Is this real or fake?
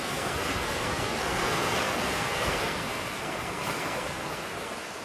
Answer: fake